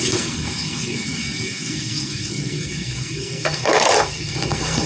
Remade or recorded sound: remade